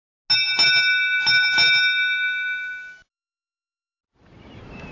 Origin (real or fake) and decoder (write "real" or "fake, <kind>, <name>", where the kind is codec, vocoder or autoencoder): real